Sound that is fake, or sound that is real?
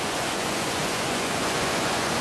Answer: fake